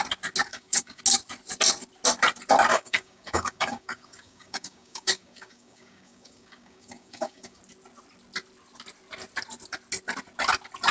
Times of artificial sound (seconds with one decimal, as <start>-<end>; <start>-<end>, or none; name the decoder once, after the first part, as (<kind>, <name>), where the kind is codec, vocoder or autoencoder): 0.5-1.0 (codec, DAC); 2.7-7.6